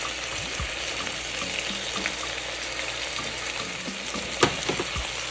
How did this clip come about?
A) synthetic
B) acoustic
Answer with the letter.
B